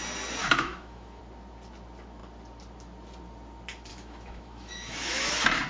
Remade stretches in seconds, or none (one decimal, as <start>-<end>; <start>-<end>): 0.4-1.2; 3.9-5.3